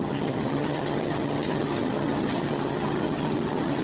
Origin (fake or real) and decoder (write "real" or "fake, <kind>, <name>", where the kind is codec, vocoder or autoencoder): fake, vocoder, HiFi-GAN